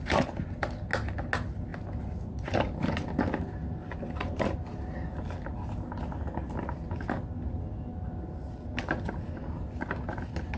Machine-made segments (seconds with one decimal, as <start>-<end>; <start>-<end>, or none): 4.3-5.0